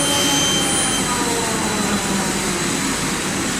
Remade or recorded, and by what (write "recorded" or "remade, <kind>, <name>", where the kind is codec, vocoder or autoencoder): recorded